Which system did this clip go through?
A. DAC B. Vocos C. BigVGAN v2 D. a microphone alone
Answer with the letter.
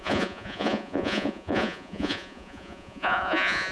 B